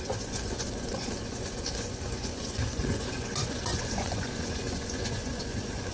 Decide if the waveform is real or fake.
fake